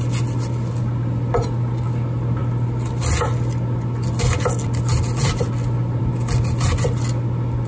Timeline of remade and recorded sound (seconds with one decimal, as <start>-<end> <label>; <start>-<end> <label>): 0.0-7.7 recorded